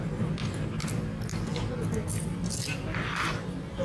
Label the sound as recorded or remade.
recorded